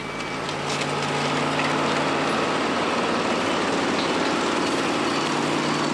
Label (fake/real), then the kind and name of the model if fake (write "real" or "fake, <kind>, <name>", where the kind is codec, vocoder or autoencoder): real